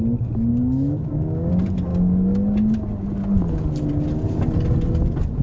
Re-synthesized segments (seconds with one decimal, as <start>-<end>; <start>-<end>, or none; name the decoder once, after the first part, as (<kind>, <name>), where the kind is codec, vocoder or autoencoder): 0.5-1.5 (codec, DAC)